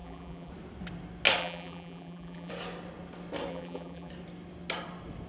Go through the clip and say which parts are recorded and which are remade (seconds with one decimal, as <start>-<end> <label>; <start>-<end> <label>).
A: 0.0-0.5 remade; 0.5-1.4 recorded; 1.4-2.5 remade; 2.5-3.5 recorded; 3.5-4.1 remade; 4.1-5.3 recorded